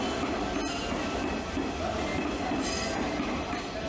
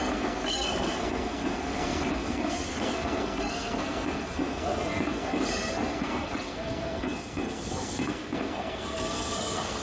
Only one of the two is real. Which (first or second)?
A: first